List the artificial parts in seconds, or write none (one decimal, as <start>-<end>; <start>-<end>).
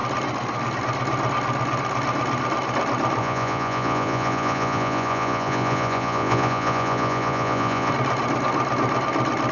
3.2-7.9